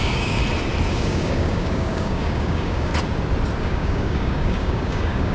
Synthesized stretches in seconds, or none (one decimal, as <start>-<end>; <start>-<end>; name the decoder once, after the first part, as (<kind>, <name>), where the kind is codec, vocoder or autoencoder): 0.0-0.4 (codec, DAC); 0.9-2.9; 3.6-5.3